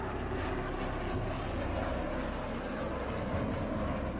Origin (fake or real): real